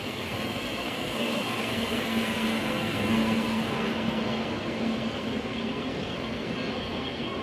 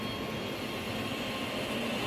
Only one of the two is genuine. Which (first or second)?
second